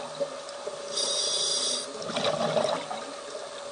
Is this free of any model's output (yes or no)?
yes